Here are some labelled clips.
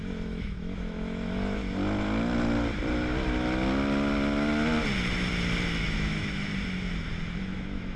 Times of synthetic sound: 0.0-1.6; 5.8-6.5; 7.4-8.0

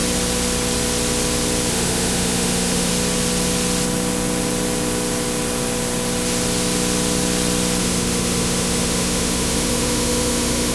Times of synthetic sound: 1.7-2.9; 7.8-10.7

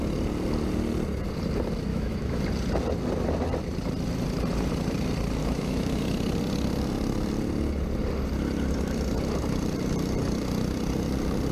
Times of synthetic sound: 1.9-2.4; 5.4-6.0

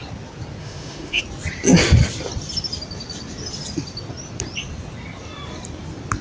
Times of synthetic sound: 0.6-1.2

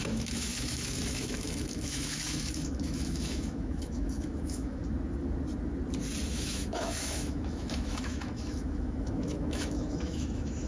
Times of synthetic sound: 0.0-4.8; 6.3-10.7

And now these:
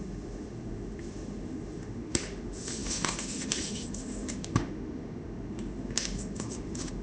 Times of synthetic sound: 0.0-7.0

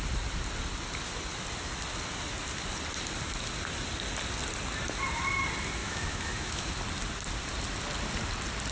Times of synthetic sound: 5.8-6.7